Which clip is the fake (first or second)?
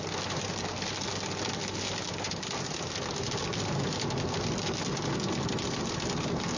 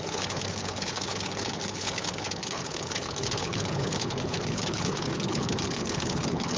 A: second